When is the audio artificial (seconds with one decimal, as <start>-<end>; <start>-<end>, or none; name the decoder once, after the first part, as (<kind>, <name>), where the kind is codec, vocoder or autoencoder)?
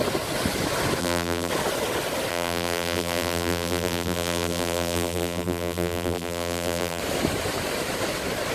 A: 1.0-1.5 (vocoder, BigVGAN v2); 2.3-7.0